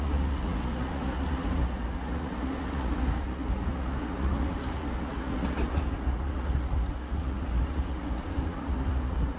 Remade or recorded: remade